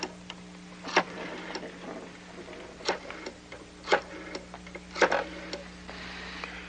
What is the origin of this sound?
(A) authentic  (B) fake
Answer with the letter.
A